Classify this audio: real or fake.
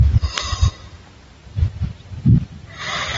fake